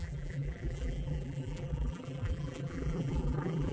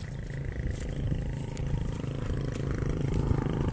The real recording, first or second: second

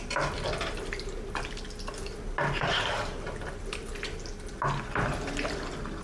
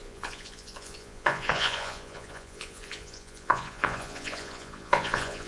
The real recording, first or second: first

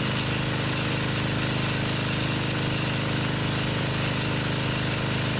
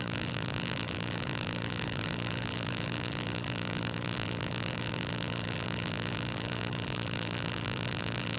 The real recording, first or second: first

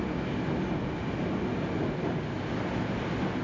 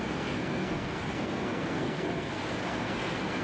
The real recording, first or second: first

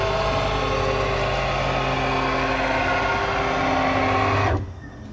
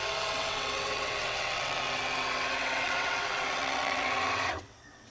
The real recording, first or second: first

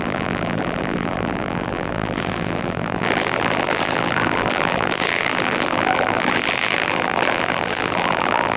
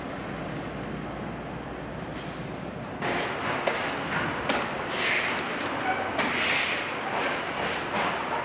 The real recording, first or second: second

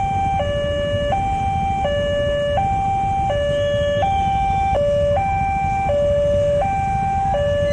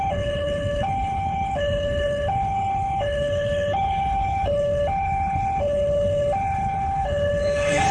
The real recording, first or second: first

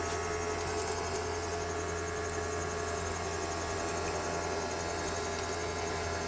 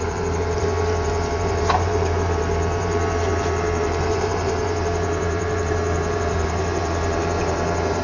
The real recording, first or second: first